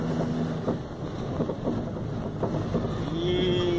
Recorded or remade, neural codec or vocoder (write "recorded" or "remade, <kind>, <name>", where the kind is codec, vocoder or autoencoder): recorded